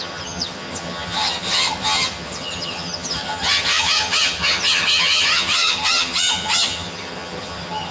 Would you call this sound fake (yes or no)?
yes